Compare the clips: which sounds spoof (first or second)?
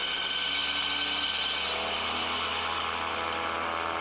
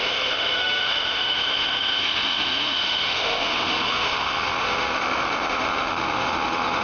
second